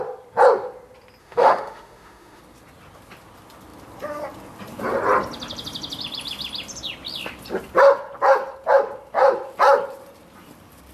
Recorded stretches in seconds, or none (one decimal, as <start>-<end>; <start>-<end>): 0.0-1.2; 2.4-10.9